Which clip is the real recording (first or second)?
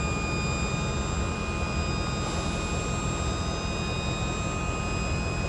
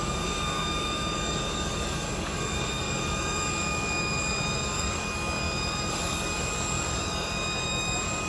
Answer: first